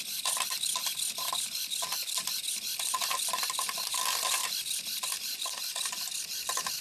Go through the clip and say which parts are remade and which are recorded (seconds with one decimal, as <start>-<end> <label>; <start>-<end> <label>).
0.0-6.8 recorded